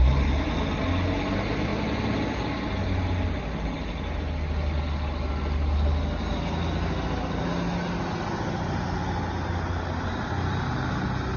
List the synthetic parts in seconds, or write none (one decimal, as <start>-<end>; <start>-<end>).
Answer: none

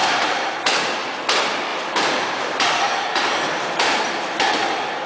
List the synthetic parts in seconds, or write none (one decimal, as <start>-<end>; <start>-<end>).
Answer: 0.0-0.6; 1.7-4.5

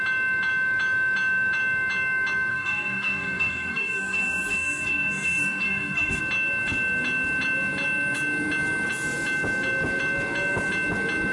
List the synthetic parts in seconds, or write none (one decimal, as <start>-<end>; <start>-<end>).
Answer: 2.5-6.2